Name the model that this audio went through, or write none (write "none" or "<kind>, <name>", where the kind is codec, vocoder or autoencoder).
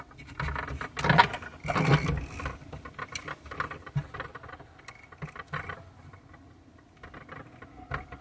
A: none